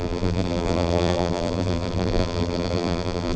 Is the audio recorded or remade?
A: remade